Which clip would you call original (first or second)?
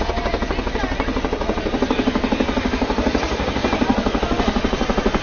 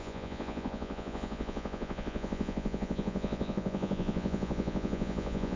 first